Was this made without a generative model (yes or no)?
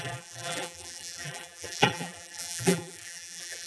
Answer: no